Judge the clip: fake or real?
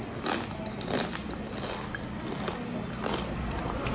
real